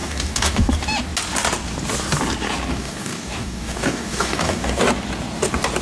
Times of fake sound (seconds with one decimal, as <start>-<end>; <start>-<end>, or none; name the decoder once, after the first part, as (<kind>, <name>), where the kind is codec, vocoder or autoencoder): 0.0-0.7 (codec, DAC); 2.7-4.8